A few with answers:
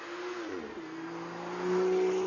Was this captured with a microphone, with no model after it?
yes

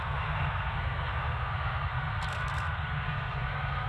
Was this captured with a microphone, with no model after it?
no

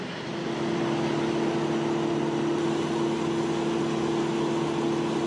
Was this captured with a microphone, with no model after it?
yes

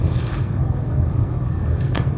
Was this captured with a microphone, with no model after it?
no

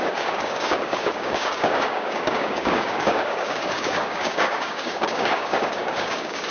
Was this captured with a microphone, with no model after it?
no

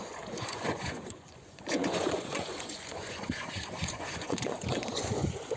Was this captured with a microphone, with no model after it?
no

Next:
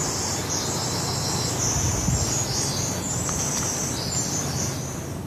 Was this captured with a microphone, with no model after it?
yes